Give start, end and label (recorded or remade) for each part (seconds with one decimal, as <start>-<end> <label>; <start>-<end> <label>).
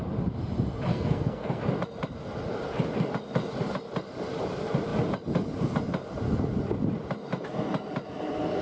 0.0-0.9 recorded; 0.9-1.6 remade; 1.6-8.6 recorded